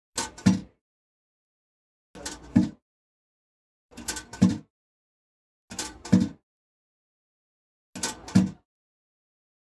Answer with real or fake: real